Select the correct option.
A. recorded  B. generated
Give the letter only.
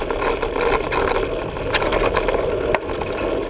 A